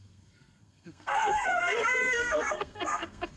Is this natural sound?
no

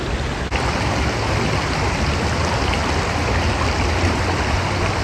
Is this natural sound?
yes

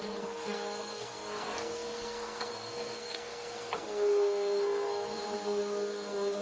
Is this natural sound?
no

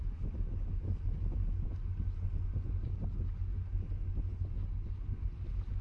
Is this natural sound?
yes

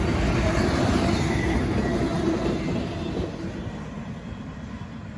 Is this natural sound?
yes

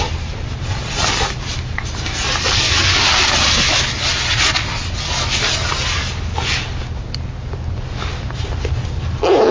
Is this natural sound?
yes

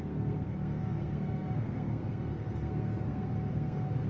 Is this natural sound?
no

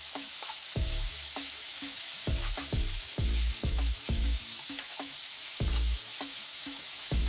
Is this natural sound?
no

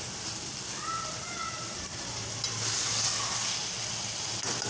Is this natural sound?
yes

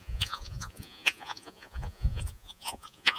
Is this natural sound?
no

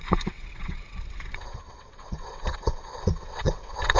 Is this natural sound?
no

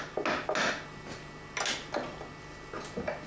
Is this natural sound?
yes